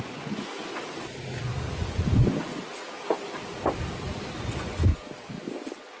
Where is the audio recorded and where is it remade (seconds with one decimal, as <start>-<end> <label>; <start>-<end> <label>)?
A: 0.0-0.6 remade; 0.6-1.4 recorded; 1.4-2.5 remade; 2.5-4.4 recorded; 4.4-4.9 remade; 4.9-6.0 recorded